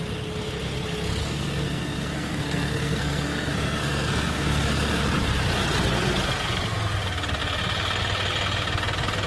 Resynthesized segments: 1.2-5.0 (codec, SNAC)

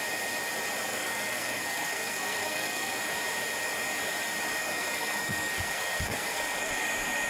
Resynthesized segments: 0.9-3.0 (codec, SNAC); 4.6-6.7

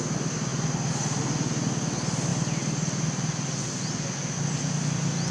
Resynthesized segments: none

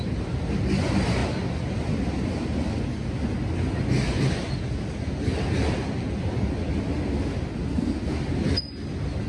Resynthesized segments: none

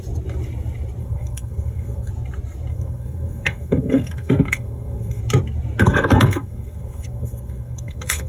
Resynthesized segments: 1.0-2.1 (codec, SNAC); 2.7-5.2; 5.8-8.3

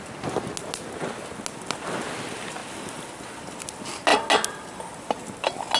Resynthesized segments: none

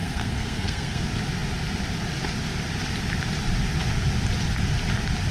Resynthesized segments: 0.0-1.0 (codec, SNAC)